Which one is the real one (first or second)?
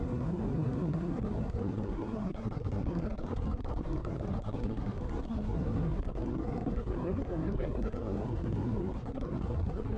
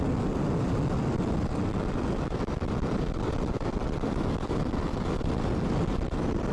second